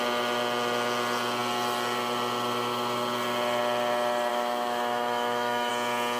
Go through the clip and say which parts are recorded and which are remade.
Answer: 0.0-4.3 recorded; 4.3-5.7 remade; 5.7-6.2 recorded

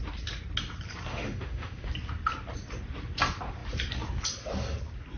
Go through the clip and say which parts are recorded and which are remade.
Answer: 0.0-1.1 recorded; 1.1-1.9 remade; 1.9-5.2 recorded

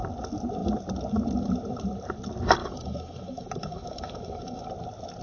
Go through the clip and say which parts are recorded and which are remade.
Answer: 0.0-2.6 recorded; 2.6-4.6 remade; 4.6-5.2 recorded

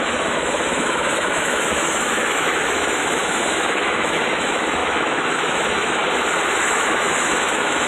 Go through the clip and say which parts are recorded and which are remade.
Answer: 0.0-6.0 remade; 6.0-6.5 recorded; 6.5-7.9 remade

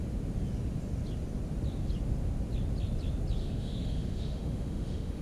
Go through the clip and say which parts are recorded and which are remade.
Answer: 0.0-3.4 recorded; 3.4-5.2 remade